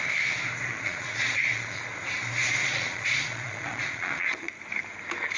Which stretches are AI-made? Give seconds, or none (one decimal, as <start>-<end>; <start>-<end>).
0.7-1.9; 2.6-4.5